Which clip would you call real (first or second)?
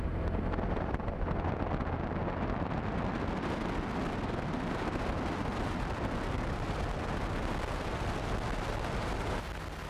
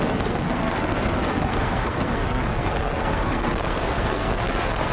first